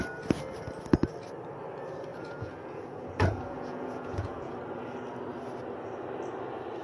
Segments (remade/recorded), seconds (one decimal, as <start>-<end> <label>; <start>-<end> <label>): 0.0-2.1 recorded; 2.1-4.5 remade; 4.5-6.8 recorded

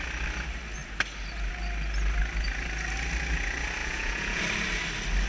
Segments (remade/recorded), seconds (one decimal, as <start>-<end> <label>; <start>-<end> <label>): 0.0-3.8 recorded; 3.8-4.4 remade; 4.4-5.3 recorded

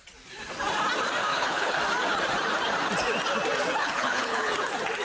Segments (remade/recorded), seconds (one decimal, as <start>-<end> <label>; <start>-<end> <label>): 0.0-1.3 recorded; 1.3-1.8 remade; 1.8-3.8 recorded; 3.8-4.5 remade; 4.5-5.0 recorded

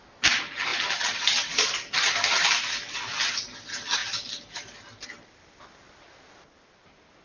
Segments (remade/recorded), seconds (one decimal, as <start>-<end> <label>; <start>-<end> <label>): 0.0-7.2 recorded

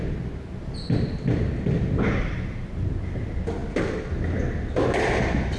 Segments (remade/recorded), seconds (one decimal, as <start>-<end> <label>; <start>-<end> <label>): 0.0-5.6 recorded

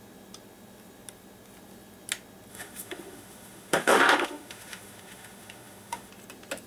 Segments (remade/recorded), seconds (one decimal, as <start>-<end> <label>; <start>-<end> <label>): 0.0-2.5 recorded; 2.5-6.1 remade; 6.1-6.7 recorded

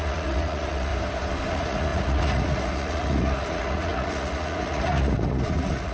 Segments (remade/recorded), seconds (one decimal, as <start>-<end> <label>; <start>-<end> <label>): 0.0-0.9 remade; 0.9-1.5 recorded; 1.5-5.9 remade